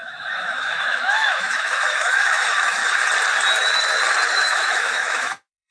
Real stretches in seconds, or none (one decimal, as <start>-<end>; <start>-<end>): 2.8-4.3